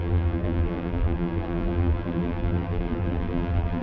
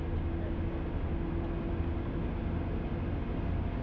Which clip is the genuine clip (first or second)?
second